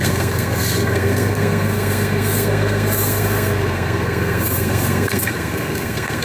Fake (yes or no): yes